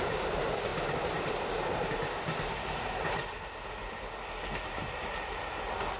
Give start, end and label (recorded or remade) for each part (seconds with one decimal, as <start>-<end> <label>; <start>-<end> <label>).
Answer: 0.0-6.0 recorded